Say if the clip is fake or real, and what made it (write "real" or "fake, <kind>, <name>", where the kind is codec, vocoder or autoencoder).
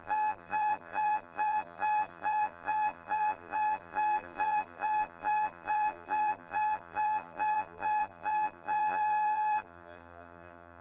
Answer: fake, vocoder, BigVGAN v2